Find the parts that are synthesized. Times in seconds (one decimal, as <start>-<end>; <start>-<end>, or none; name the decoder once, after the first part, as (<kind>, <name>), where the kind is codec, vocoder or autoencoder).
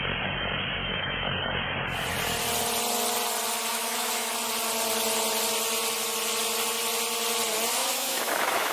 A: 0.8-1.3 (autoencoder, DAC-VAE); 3.7-4.3; 7.8-8.7